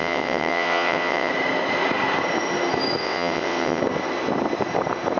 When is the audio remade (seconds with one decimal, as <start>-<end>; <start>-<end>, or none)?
0.0-1.3; 3.0-3.8